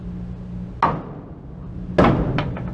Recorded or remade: recorded